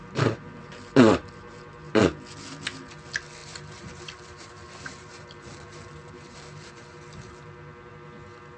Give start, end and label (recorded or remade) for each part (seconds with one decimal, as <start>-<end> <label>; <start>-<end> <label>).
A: 0.0-2.0 remade; 2.0-3.4 recorded; 3.4-7.9 remade; 7.9-8.6 recorded